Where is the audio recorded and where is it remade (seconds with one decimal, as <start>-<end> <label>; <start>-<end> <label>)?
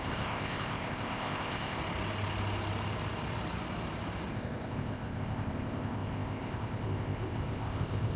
0.0-1.8 remade; 1.8-4.3 recorded; 4.3-8.2 remade